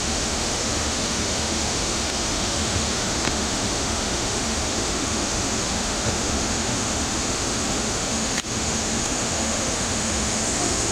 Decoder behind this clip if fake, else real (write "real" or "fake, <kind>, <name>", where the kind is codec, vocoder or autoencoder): fake, autoencoder, DAC-VAE